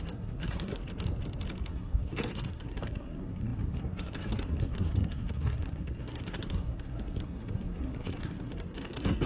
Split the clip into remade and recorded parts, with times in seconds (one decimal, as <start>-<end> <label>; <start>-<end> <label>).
0.0-0.8 remade; 0.8-1.7 recorded; 1.7-9.3 remade